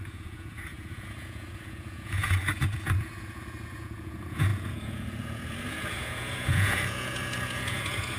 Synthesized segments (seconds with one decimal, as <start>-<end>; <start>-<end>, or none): 0.0-8.2